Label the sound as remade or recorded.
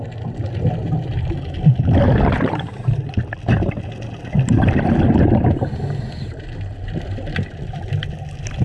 recorded